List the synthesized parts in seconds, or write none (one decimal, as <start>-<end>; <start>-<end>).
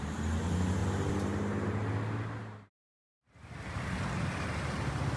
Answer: none